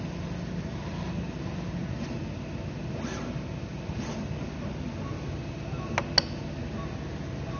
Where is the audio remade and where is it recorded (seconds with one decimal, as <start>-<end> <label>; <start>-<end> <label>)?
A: 0.0-7.6 recorded